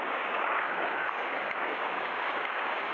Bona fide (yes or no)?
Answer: no